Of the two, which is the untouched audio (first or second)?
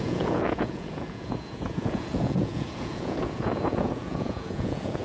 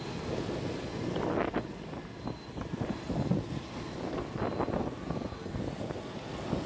second